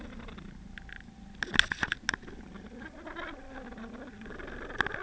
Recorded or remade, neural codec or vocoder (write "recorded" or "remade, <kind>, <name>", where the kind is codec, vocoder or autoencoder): recorded